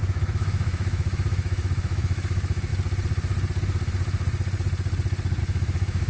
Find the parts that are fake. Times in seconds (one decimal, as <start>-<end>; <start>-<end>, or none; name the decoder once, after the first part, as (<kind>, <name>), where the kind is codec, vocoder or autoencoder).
0.0-2.7 (autoencoder, DAC-VAE); 5.4-6.1